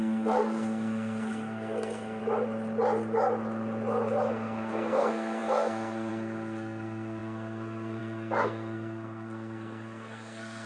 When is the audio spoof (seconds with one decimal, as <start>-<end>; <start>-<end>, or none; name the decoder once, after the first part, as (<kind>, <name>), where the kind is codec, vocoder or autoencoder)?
0.0-2.2 (codec, SNAC); 4.3-10.7